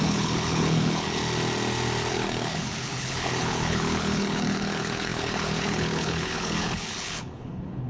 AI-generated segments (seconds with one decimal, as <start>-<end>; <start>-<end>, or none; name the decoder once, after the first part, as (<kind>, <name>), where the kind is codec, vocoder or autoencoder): 0.0-1.2 (codec, HILCodec); 2.1-7.9